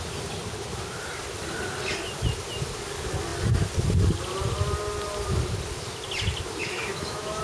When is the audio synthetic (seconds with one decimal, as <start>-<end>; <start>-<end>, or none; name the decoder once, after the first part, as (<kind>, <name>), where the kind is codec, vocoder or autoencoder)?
6.6-7.4 (autoencoder, DAC-VAE)